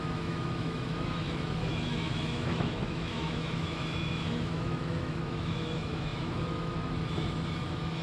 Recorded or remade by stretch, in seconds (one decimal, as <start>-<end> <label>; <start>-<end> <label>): 0.0-8.0 remade